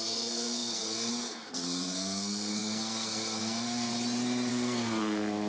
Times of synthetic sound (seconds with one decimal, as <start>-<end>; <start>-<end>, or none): 0.0-3.9; 4.5-5.5